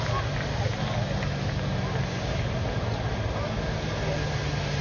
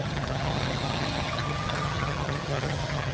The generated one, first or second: second